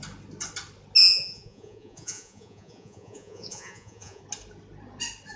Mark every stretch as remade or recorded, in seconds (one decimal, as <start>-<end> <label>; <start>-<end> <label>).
0.0-1.0 recorded; 1.0-4.2 remade; 4.2-5.4 recorded